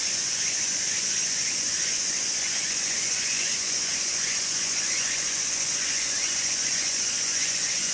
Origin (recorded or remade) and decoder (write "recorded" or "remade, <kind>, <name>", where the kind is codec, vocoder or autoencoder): remade, vocoder, Vocos